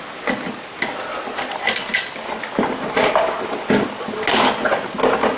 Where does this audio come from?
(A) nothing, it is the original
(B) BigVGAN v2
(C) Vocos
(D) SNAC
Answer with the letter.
A